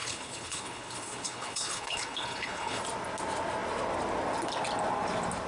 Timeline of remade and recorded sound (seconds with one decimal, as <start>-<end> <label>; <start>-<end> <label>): 0.0-2.8 remade; 2.8-5.5 recorded